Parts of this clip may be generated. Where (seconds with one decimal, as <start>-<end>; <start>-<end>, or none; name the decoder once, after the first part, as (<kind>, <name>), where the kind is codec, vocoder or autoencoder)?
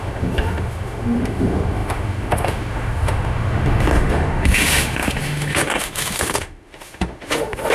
0.0-7.7 (autoencoder, DAC-VAE)